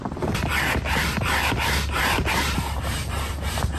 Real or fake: fake